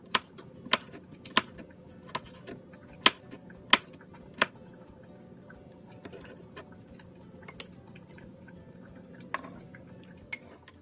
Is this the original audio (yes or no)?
yes